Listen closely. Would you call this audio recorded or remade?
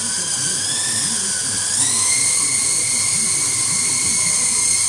recorded